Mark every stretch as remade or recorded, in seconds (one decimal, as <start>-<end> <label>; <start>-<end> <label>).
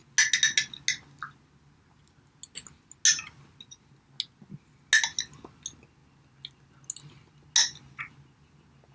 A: 0.0-8.9 recorded